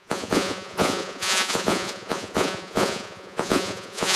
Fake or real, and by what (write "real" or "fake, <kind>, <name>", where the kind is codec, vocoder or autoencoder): fake, vocoder, Vocos